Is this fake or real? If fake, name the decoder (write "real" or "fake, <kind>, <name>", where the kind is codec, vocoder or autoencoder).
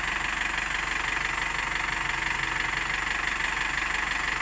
real